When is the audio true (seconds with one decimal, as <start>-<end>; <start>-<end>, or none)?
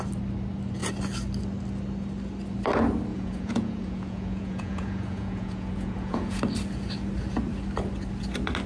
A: 0.0-3.1; 6.4-8.7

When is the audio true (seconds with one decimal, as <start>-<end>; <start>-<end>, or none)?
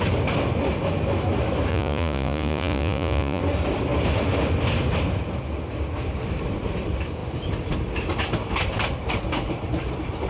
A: 0.0-1.7; 3.4-10.3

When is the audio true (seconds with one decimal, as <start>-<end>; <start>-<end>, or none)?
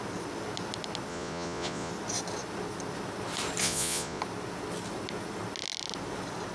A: 0.0-1.1; 1.9-3.6; 4.2-6.5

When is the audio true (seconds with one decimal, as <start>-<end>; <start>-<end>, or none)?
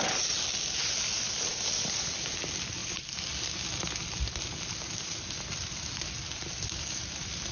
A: 0.0-7.5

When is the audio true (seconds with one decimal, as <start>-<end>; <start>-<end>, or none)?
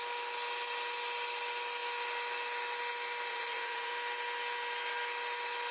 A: 0.0-3.3; 3.9-5.7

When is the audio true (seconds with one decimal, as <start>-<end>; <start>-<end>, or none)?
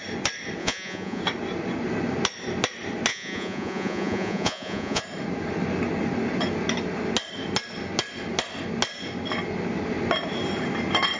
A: 0.0-0.6; 1.2-3.1; 5.0-11.2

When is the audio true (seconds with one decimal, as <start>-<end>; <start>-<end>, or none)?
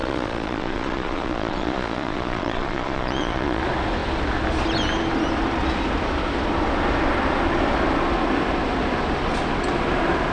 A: 3.6-10.3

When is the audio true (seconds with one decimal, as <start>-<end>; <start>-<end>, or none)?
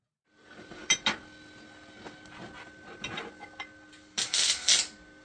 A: 0.0-5.2